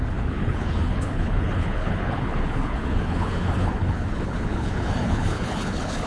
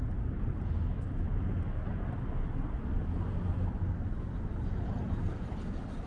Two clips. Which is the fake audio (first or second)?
first